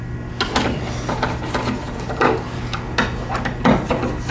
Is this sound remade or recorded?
recorded